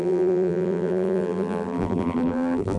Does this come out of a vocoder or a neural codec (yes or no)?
yes